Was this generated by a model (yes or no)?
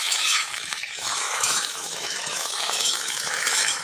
yes